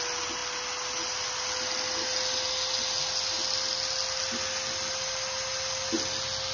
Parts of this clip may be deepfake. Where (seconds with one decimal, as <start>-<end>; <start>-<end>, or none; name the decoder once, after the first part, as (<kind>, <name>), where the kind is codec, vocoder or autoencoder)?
none